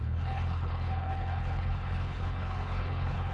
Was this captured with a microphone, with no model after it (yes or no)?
no